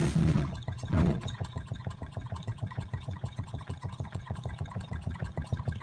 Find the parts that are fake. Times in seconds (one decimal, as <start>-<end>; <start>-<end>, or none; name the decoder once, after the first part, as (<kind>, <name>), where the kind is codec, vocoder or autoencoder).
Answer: 0.0-5.8 (vocoder, Vocos)